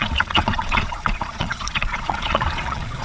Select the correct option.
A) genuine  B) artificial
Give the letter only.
B